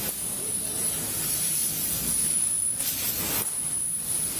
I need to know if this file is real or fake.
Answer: real